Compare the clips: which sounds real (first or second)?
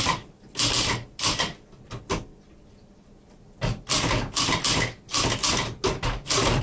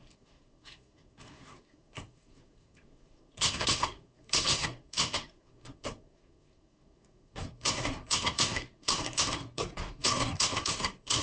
first